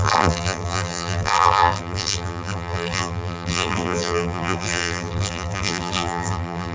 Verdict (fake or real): fake